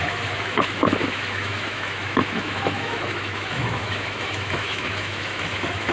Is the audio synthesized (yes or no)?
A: yes